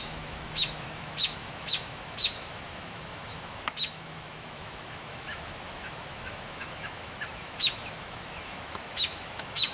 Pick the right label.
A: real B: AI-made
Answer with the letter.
B